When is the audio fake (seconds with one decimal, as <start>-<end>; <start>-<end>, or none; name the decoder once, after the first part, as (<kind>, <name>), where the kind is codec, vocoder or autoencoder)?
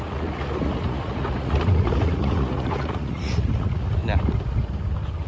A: 0.0-4.0 (vocoder, Vocos)